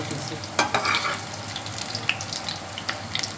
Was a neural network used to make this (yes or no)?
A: no